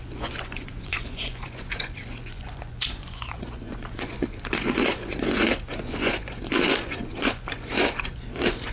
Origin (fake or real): fake